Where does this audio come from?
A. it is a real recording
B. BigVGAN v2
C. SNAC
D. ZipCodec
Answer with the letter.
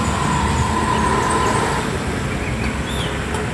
A